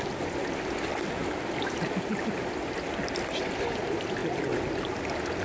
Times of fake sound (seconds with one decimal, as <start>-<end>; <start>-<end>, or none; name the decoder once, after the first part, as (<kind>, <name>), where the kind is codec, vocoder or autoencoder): none